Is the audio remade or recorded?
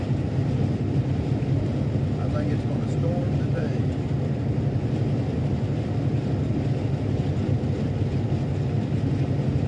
recorded